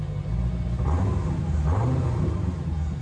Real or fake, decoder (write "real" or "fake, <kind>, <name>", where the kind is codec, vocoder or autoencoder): real